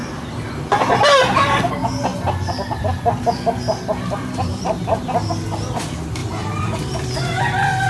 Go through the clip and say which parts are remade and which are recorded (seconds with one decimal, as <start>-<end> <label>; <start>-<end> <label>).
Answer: 0.0-1.6 remade; 1.6-2.1 recorded; 2.1-5.0 remade; 5.0-6.2 recorded; 6.2-6.8 remade; 6.8-7.9 recorded